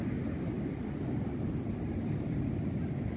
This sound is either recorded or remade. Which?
recorded